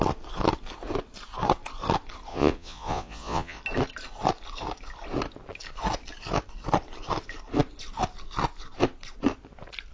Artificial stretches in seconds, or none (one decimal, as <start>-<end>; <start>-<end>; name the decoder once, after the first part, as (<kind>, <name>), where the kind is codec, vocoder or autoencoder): 2.3-3.6 (vocoder, Vocos)